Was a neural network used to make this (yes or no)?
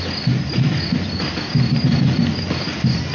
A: no